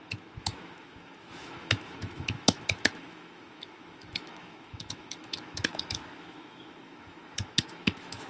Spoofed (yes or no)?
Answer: yes